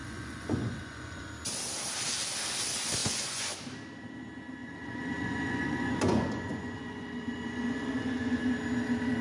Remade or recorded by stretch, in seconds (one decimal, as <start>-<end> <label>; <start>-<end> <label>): 0.0-1.3 remade; 1.3-3.0 recorded; 3.0-3.5 remade; 3.5-4.6 recorded; 4.6-8.4 remade; 8.4-9.2 recorded